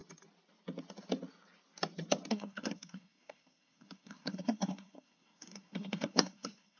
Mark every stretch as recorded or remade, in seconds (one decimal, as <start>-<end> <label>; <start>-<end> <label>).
0.0-2.3 recorded; 2.3-6.8 remade